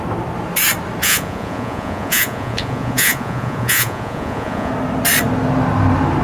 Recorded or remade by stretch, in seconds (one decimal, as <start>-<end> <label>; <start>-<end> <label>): 0.0-1.0 recorded; 1.0-4.7 remade; 4.7-6.2 recorded